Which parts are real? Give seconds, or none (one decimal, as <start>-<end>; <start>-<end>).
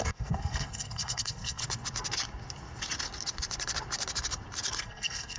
1.6-4.8